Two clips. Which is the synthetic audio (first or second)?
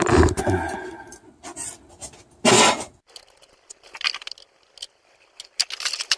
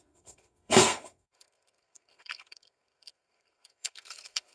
second